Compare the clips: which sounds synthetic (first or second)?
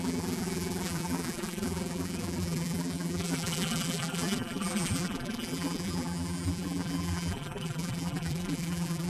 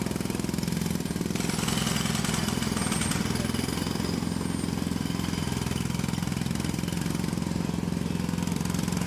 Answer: first